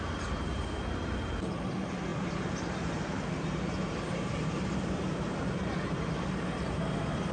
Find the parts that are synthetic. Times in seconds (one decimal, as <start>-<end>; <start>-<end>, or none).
0.0-7.3